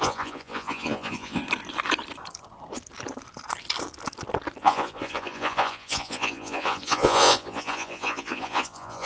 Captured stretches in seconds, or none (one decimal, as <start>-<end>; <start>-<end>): 1.4-4.6